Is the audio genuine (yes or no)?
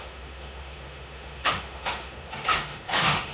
no